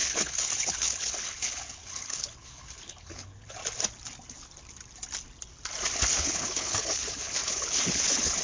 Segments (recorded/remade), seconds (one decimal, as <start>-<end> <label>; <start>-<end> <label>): 0.0-3.6 remade; 3.6-6.2 recorded; 6.2-8.4 remade